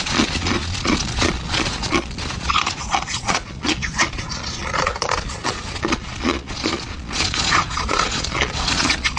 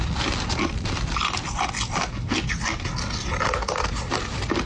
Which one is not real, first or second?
first